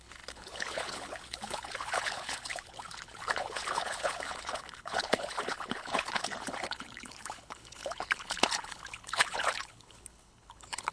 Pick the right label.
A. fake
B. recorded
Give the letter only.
A